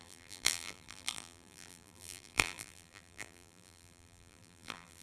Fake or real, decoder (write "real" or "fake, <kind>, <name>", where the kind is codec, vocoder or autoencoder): fake, vocoder, BigVGAN v2